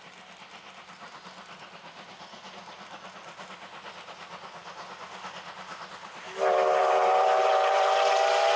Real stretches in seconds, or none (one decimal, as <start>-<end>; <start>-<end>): 0.0-8.6